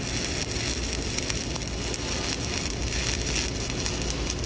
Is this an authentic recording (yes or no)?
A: yes